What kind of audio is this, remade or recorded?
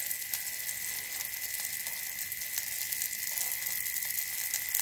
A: recorded